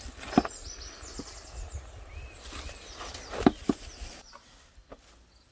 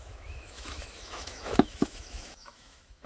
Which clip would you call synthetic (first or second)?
second